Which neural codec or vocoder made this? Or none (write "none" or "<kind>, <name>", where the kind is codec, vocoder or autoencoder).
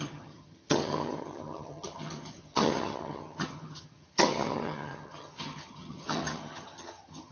vocoder, HiFi-GAN